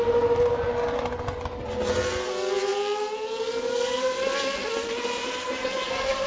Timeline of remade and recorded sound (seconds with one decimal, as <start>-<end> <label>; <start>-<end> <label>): 0.0-6.3 recorded